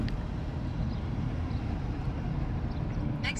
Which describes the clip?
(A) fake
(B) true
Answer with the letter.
B